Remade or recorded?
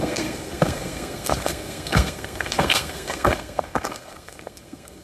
remade